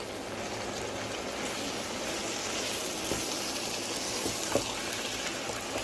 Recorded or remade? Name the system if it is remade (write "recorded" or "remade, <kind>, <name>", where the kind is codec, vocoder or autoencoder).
recorded